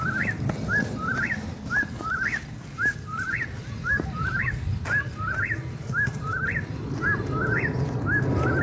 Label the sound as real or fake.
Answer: real